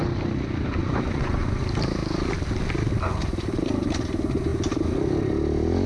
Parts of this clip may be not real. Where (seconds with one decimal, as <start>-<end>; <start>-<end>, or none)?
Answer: 0.8-1.6